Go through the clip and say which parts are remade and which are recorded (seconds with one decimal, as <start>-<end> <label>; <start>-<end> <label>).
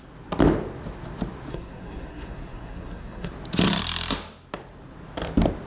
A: 0.0-1.5 recorded; 1.5-3.3 remade; 3.3-5.7 recorded